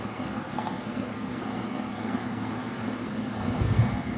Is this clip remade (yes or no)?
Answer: yes